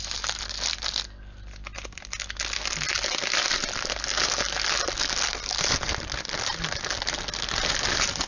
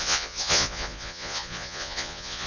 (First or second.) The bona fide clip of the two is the first